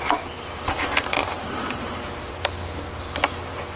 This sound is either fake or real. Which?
real